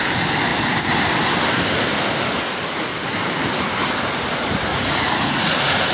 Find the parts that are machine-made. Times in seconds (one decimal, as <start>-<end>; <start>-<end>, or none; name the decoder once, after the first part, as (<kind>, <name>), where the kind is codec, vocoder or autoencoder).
4.7-5.9 (vocoder, Vocos)